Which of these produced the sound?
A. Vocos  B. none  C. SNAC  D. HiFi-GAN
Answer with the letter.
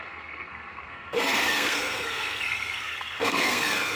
C